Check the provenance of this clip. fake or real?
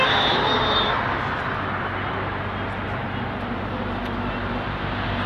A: real